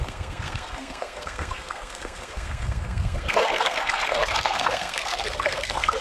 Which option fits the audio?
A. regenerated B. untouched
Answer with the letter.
A